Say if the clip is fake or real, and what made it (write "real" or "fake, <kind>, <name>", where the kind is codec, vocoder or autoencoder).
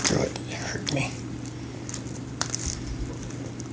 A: real